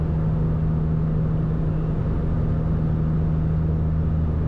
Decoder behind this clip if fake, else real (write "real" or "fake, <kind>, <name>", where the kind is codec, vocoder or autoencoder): real